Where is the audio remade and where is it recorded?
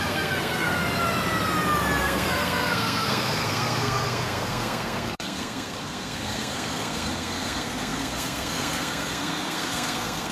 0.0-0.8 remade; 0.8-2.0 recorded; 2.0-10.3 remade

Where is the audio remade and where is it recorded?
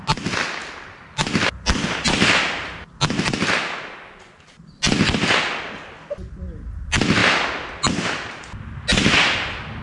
0.0-9.8 recorded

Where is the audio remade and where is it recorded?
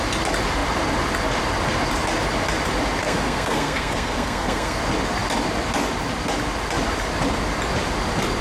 0.0-3.0 recorded; 3.0-4.8 remade; 4.8-8.4 recorded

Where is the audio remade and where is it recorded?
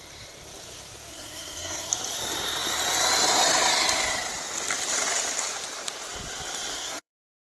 0.0-1.1 recorded; 1.1-1.9 remade; 1.9-6.7 recorded; 6.7-7.4 remade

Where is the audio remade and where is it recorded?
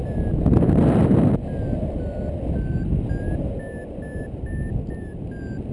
0.0-5.7 recorded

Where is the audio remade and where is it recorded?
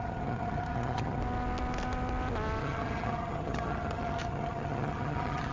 0.0-1.2 remade; 1.2-2.6 recorded; 2.6-5.5 remade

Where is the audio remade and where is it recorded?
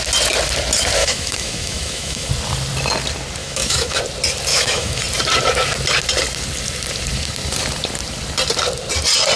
0.0-1.0 recorded; 1.0-2.3 remade; 2.3-3.4 recorded; 3.4-4.0 remade; 4.0-4.5 recorded; 4.5-5.0 remade; 5.0-9.4 recorded